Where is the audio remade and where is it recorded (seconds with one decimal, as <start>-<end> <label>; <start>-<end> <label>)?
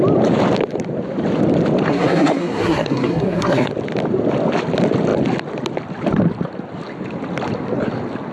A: 0.0-1.9 recorded; 1.9-3.7 remade; 3.7-8.3 recorded